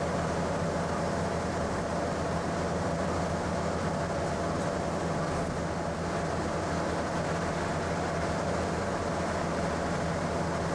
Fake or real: real